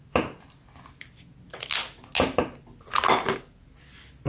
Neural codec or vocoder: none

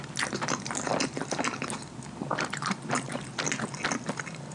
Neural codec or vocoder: none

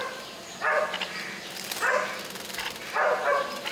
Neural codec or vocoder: none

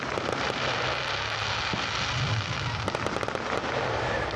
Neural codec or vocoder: none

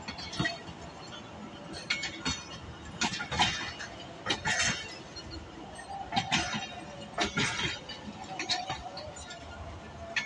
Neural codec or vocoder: none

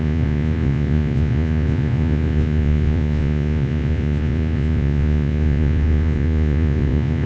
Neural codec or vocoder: vocoder, Vocos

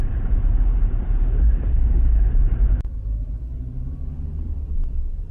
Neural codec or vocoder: vocoder, BigVGAN v2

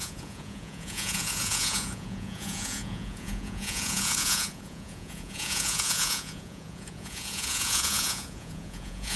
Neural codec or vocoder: vocoder, Vocos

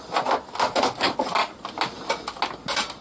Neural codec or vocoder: none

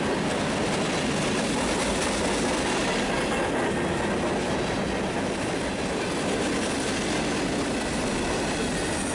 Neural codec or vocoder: none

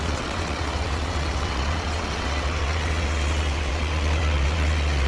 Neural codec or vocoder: vocoder, WaveNeXt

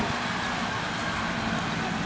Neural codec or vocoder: none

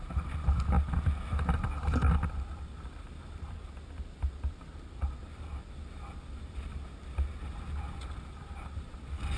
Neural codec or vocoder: none